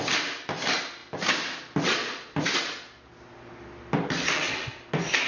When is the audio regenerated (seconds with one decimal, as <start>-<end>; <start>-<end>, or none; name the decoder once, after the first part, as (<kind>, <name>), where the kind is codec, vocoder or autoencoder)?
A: none